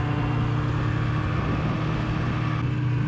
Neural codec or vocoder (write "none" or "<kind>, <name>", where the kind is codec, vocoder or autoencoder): none